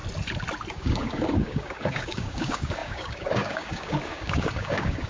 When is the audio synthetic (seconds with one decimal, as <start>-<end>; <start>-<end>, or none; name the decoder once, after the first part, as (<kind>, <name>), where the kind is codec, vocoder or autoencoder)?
0.7-5.1 (codec, DAC)